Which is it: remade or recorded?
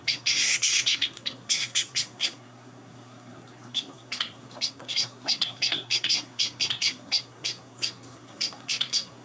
remade